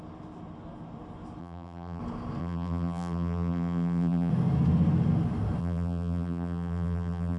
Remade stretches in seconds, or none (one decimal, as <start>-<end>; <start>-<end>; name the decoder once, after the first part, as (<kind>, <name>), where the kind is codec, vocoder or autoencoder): 1.4-2.0 (vocoder, BigVGAN v2); 2.4-4.3; 5.6-7.4